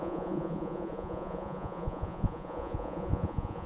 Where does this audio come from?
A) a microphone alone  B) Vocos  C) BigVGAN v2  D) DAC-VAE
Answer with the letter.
B